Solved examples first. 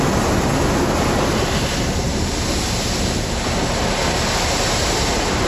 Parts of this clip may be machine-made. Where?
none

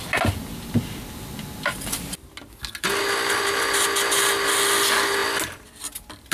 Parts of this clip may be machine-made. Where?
none

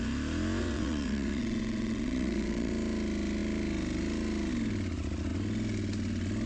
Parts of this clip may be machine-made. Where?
0.6-2.7 (vocoder, WaveNeXt)

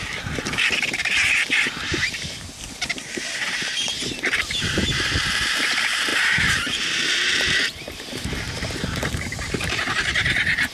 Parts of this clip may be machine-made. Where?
0.0-10.7 (vocoder, BigVGAN v2)

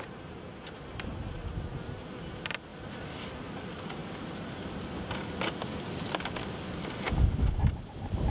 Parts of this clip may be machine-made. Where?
none

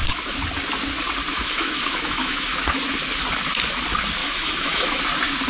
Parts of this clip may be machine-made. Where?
1.3-2.5 (autoencoder, DAC-VAE); 4.2-5.0